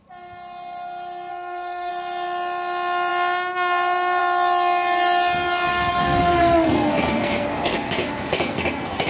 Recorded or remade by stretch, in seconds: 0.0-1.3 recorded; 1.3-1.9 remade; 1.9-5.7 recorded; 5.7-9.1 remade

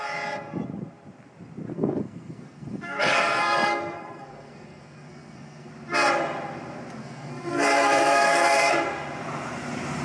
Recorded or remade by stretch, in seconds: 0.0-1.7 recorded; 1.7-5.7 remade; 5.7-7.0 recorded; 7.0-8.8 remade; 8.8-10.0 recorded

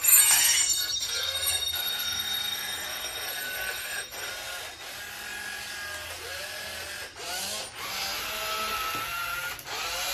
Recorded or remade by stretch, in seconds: 0.0-4.3 remade; 4.3-10.1 recorded

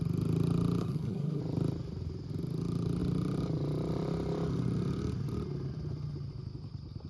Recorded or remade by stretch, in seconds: 0.0-0.8 recorded; 0.8-1.4 remade; 1.4-7.1 recorded

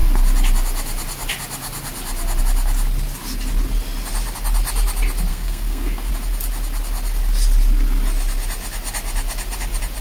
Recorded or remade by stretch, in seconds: 0.0-5.3 recorded; 5.3-6.1 remade; 6.1-10.0 recorded